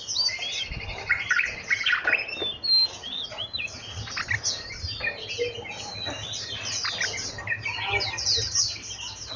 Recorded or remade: recorded